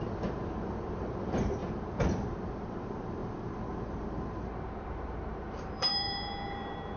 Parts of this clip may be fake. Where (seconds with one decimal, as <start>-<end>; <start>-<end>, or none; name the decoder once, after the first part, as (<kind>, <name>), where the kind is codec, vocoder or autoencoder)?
0.0-1.6 (vocoder, BigVGAN v2); 2.3-7.0